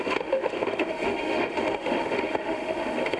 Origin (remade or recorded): remade